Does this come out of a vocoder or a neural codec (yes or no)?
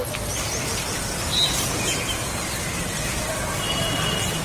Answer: no